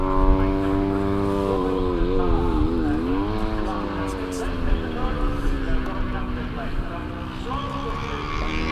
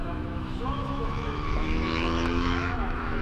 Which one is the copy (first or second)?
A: second